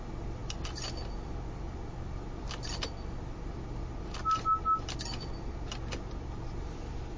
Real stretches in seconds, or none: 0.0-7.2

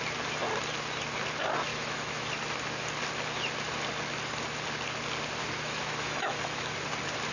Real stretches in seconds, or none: 0.0-1.7; 2.3-5.4; 6.7-7.3

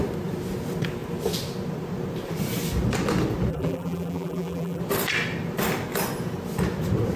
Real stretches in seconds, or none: 0.0-3.5; 4.8-7.2

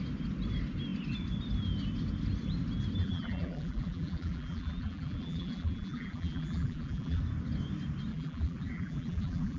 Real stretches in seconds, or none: 0.0-3.0; 7.2-8.1

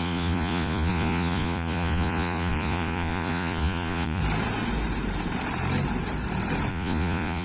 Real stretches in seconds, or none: 4.2-6.7

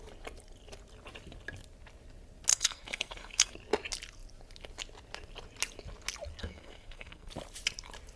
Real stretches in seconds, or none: 0.0-2.5; 3.5-6.4; 7.3-8.2

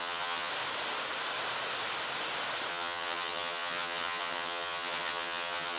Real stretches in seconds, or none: 0.5-2.7

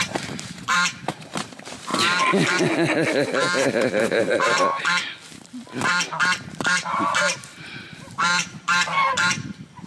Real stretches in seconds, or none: 1.9-3.8; 4.7-6.1